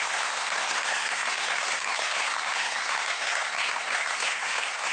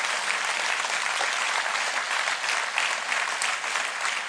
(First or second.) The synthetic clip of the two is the first